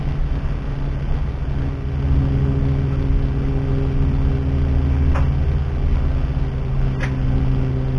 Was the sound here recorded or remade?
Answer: recorded